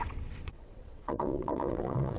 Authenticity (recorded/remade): remade